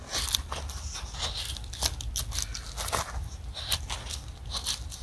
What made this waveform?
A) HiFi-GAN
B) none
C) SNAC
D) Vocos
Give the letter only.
B